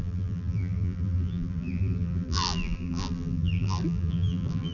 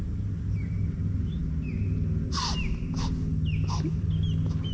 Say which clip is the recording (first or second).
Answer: second